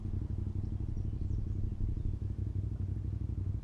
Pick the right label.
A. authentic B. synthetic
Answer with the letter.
A